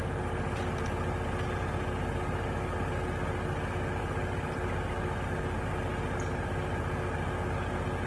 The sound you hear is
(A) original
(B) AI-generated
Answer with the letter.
A